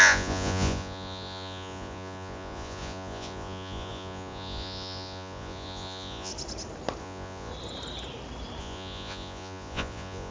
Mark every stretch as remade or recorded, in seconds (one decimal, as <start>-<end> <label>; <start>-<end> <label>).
0.0-6.3 remade; 6.3-7.0 recorded; 7.0-7.5 remade; 7.5-8.6 recorded; 8.6-10.3 remade